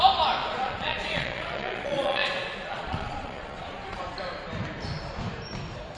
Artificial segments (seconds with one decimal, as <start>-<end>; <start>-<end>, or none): 0.4-4.0